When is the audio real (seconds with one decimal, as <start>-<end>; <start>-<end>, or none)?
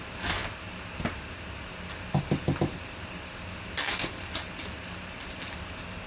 0.0-6.1